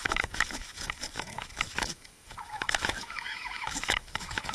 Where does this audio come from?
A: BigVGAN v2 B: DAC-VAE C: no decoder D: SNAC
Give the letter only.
B